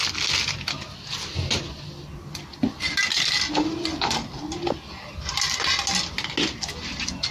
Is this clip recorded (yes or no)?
yes